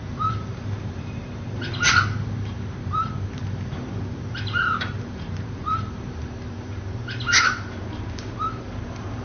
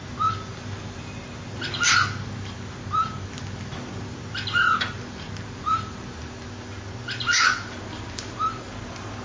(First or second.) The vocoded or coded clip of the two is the first